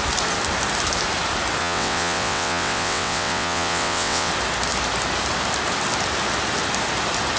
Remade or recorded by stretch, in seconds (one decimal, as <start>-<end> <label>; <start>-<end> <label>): 0.0-1.6 recorded; 1.6-4.3 remade; 4.3-7.4 recorded